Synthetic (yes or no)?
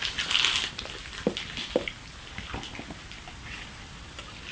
no